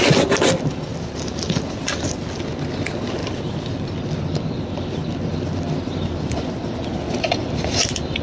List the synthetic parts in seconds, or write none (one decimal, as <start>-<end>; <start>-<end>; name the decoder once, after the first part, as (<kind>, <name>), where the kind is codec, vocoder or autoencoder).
0.9-2.3 (vocoder, BigVGAN v2); 3.2-5.7